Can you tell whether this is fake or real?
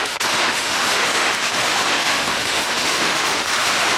fake